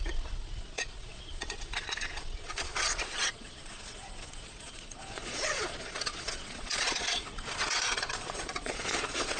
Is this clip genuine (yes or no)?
no